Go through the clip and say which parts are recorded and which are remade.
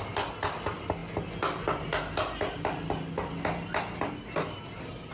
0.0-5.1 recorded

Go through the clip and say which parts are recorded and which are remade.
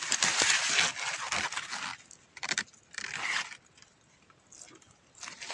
0.0-5.5 recorded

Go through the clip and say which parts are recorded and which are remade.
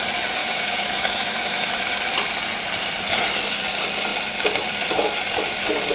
0.0-0.4 recorded; 0.4-1.8 remade; 1.8-5.9 recorded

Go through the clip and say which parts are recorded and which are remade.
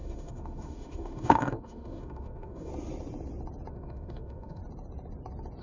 0.0-2.7 remade; 2.7-3.7 recorded; 3.7-4.6 remade; 4.6-5.6 recorded